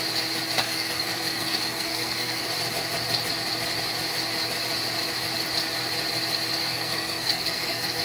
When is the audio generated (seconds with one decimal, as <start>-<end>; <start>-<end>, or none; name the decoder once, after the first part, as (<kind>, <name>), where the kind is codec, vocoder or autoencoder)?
0.6-2.4 (codec, SNAC); 6.6-8.0